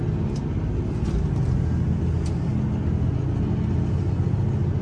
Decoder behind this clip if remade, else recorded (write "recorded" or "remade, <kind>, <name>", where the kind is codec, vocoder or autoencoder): recorded